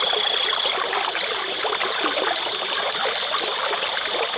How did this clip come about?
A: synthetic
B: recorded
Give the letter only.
B